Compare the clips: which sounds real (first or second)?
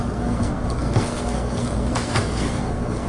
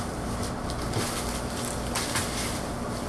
second